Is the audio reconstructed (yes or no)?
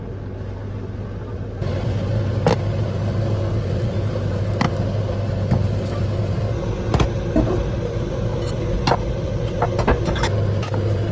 no